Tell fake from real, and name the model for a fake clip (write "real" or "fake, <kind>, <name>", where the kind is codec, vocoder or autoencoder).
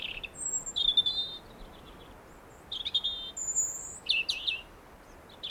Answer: real